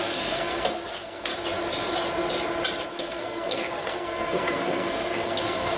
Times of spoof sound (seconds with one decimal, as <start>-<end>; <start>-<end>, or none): 0.0-1.3; 2.9-5.8